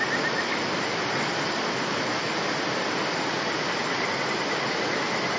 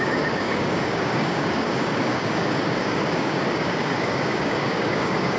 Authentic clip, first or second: first